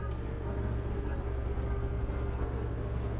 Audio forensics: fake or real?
fake